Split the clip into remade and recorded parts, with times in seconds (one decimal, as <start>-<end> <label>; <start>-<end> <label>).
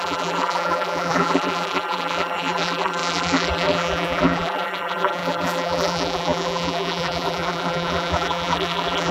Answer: 0.0-9.1 remade